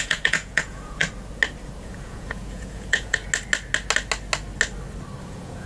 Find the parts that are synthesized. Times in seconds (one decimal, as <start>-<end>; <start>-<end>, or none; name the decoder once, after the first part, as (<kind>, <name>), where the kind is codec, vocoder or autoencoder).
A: 0.0-1.0 (vocoder, Vocos); 1.8-3.2; 5.2-5.7